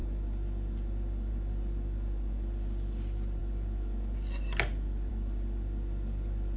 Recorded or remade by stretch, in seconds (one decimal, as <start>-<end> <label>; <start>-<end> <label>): 0.0-6.6 recorded